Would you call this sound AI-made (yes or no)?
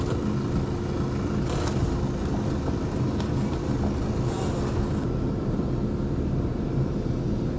no